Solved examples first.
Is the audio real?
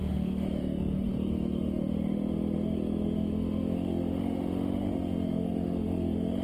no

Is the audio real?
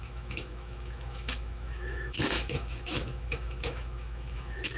no